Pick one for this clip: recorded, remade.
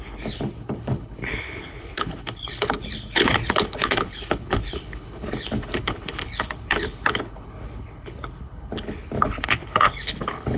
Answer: remade